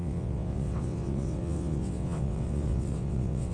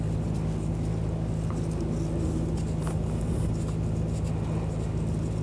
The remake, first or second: first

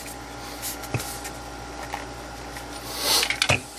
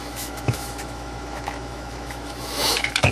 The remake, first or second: second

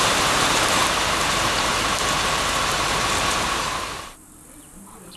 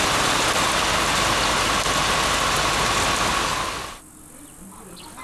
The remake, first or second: first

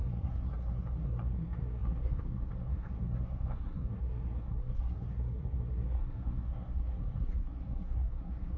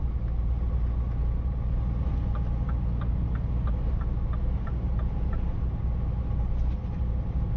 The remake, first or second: first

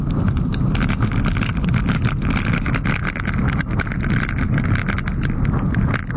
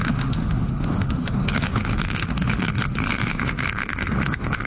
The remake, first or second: second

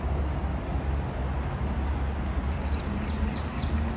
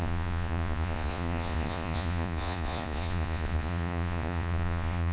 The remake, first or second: second